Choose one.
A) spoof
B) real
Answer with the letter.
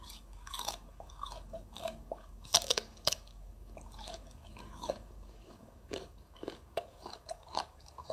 A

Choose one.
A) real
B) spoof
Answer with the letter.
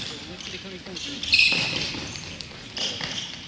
A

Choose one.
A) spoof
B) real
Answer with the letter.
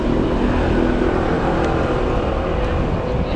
B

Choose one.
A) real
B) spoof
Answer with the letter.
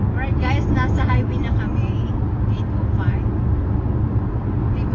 A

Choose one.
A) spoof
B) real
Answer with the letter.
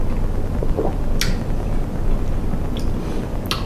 B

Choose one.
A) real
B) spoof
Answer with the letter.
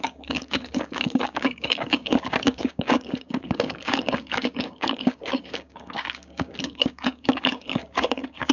B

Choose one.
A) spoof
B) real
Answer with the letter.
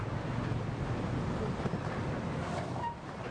B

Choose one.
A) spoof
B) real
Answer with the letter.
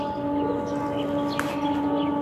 B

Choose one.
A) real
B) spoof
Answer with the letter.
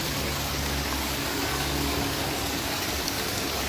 B